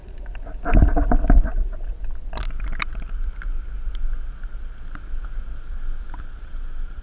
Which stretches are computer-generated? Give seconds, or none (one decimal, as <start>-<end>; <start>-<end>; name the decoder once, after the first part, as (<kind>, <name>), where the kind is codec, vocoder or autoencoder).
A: none